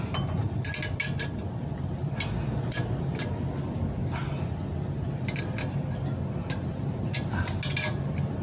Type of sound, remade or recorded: recorded